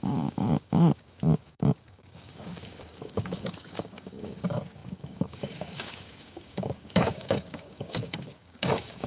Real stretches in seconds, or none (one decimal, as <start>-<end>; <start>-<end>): none